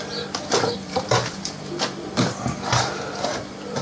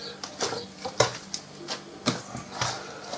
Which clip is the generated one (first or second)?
first